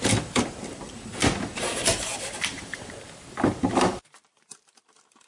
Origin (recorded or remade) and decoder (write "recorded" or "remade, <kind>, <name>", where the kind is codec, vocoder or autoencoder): remade, vocoder, BigVGAN v2